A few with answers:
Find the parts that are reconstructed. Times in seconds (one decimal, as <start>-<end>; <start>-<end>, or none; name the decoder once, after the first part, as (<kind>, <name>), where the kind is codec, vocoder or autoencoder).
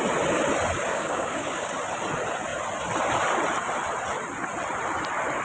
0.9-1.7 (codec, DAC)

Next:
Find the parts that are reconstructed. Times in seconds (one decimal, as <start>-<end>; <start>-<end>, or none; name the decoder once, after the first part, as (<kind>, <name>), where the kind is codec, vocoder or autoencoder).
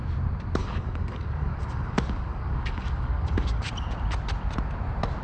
0.6-3.7 (codec, DAC)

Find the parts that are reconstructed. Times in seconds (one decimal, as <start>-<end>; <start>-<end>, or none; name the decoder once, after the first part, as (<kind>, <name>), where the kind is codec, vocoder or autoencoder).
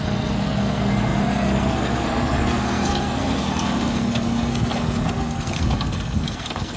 0.0-6.8 (codec, SNAC)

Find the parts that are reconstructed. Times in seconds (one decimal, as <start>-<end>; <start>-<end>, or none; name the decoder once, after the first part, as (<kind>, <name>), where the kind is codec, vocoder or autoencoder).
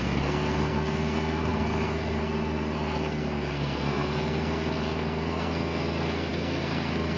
0.0-7.2 (codec, SNAC)